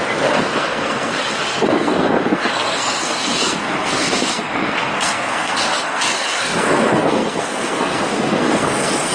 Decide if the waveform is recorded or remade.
remade